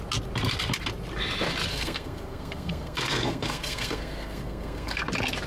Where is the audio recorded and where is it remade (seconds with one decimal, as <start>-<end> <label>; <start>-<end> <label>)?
0.0-1.7 recorded; 1.7-5.0 remade; 5.0-5.5 recorded